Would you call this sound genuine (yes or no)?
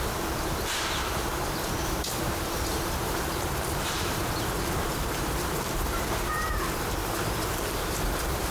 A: no